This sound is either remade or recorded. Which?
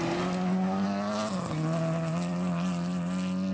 recorded